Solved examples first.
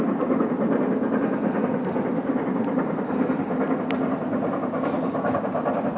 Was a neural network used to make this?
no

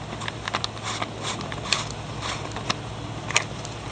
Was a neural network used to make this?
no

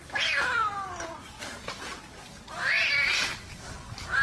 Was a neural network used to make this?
no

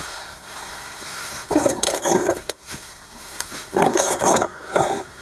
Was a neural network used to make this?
yes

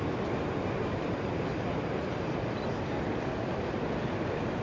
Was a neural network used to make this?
no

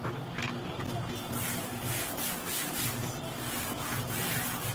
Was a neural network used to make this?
no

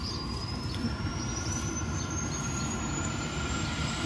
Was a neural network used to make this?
yes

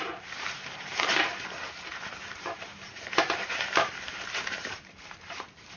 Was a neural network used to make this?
yes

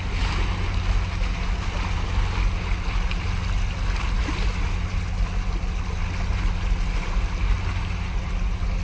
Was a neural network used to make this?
no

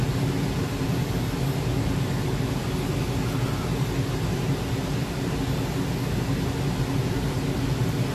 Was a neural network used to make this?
no